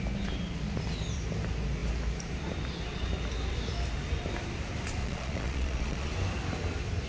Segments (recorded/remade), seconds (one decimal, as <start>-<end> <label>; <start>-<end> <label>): 0.0-5.0 recorded; 5.0-6.1 remade; 6.1-7.1 recorded